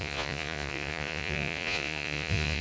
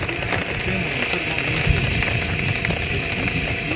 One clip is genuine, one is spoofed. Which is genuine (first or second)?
second